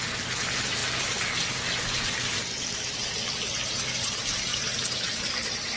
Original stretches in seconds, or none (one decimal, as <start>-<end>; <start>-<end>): 0.0-5.8